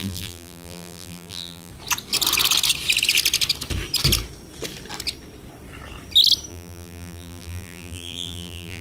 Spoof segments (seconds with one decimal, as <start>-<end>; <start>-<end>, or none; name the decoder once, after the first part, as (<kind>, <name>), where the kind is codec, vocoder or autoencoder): 0.0-1.7 (vocoder, BigVGAN v2); 6.5-8.8